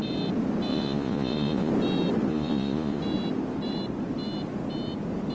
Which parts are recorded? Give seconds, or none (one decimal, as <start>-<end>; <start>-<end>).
0.0-0.7; 1.7-2.3; 3.0-5.3